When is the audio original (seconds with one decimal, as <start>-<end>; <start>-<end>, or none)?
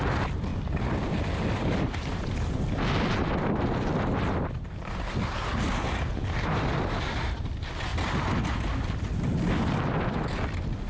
0.0-10.9